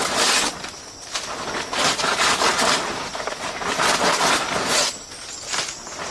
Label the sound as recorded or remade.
recorded